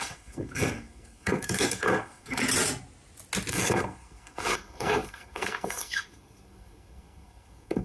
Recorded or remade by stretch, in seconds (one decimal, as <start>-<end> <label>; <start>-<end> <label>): 0.0-2.4 remade; 2.4-3.5 recorded; 3.5-7.8 remade